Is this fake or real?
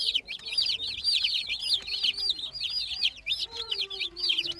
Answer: real